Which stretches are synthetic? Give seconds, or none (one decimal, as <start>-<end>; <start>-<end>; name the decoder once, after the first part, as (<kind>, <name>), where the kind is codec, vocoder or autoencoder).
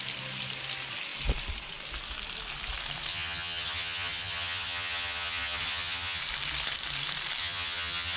3.1-6.2 (vocoder, HiFi-GAN); 7.4-8.2